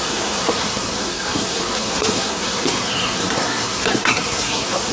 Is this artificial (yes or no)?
yes